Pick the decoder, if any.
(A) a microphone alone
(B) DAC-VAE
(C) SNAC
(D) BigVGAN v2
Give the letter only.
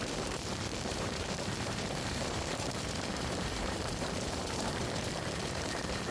D